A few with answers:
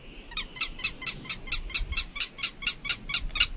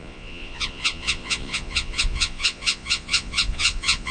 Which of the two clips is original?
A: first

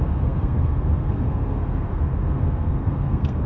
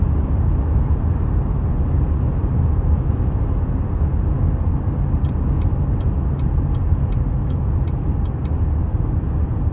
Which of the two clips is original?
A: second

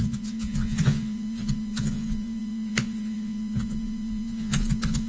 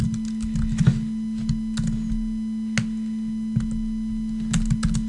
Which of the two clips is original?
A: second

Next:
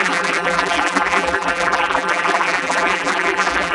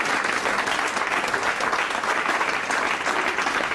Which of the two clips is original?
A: second